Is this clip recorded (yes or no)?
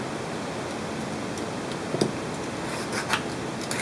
yes